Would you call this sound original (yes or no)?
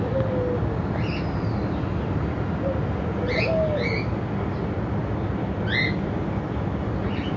yes